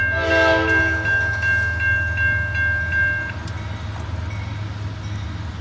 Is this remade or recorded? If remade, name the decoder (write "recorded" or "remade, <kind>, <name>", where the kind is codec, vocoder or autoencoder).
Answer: recorded